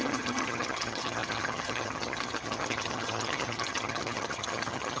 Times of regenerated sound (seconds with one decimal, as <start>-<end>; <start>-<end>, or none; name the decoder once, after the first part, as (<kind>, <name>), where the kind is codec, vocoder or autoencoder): 0.0-5.0 (vocoder, HiFi-GAN)